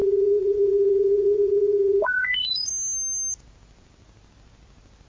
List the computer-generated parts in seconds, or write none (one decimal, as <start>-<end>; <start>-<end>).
0.0-2.7